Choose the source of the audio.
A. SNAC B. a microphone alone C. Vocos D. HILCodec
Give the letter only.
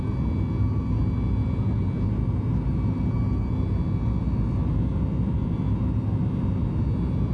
B